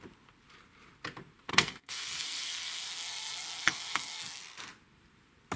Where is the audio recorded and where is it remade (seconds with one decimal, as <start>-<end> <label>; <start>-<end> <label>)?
0.0-1.5 recorded; 1.5-4.4 remade; 4.4-5.6 recorded